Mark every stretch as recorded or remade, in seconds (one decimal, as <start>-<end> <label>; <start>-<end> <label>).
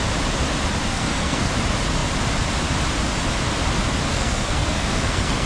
0.0-0.9 recorded; 0.9-1.5 remade; 1.5-4.1 recorded; 4.1-5.5 remade